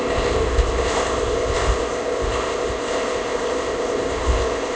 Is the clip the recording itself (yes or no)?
no